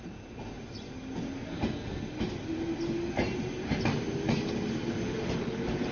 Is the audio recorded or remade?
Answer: recorded